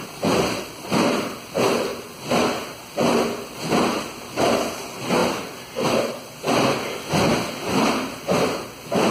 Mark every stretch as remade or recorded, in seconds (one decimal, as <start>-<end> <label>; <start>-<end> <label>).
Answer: 0.0-9.1 recorded